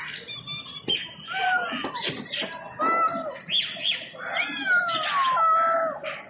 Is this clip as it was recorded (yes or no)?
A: yes